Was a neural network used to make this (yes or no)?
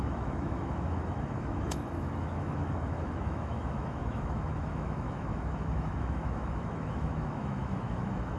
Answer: yes